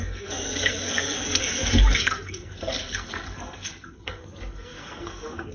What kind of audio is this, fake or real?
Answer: fake